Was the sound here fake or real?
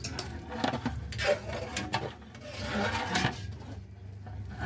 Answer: real